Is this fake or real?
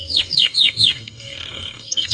fake